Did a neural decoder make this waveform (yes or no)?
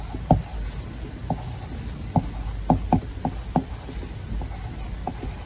no